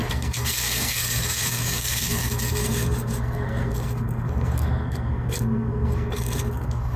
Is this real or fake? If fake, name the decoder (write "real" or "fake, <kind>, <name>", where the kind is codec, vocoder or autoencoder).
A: fake, codec, SNAC